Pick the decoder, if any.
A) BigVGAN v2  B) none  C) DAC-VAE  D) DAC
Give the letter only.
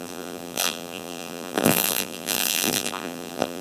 A